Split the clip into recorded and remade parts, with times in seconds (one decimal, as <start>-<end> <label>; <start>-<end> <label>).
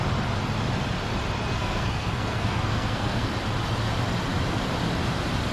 0.0-1.6 recorded; 1.6-3.3 remade; 3.3-5.5 recorded